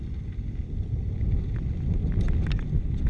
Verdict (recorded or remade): recorded